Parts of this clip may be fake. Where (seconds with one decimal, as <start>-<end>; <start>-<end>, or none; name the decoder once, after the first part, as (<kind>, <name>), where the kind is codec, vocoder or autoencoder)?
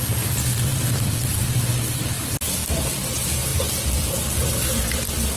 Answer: 3.5-4.1 (vocoder, BigVGAN v2)